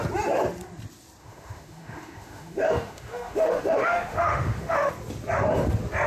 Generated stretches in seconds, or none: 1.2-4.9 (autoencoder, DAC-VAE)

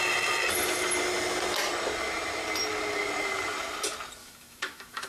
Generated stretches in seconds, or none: 4.2-5.1 (autoencoder, DAC-VAE)

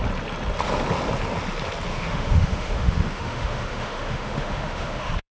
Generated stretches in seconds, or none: 1.9-5.3 (autoencoder, DAC-VAE)

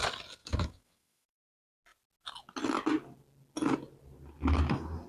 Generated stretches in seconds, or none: 0.4-1.5 (autoencoder, DAC-VAE)